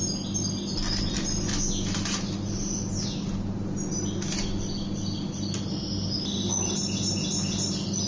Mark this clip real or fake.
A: real